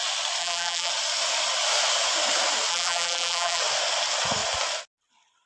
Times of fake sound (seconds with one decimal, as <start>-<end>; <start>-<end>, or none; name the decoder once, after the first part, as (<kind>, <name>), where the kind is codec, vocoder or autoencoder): 0.4-0.9 (vocoder, BigVGAN v2); 2.7-3.6